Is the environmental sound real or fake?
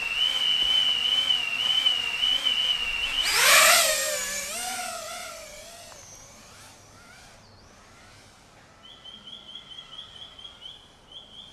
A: real